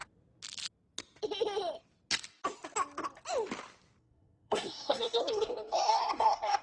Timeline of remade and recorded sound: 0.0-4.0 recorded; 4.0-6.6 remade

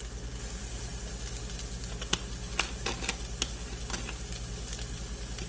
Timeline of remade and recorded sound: 0.0-5.5 recorded